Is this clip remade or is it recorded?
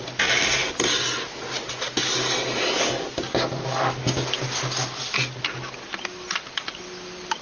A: recorded